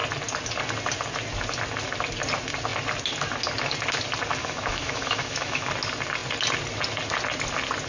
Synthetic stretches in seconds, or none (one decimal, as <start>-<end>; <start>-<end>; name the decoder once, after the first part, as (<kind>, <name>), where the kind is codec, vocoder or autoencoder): 4.4-5.7 (autoencoder, DAC-VAE)